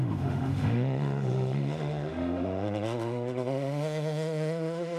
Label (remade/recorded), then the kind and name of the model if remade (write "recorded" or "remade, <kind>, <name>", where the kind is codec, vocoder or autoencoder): remade, autoencoder, DAC-VAE